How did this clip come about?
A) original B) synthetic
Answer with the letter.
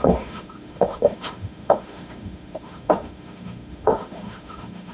B